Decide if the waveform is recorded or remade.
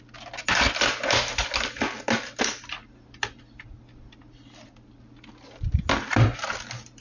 recorded